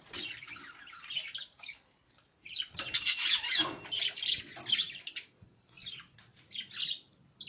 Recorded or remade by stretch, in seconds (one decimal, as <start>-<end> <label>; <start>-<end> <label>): 0.0-7.5 recorded